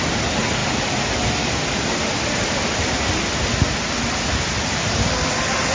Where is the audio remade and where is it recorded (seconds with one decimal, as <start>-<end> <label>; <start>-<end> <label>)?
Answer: 0.0-5.7 recorded